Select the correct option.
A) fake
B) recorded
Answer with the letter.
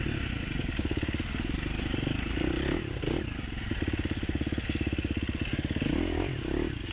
B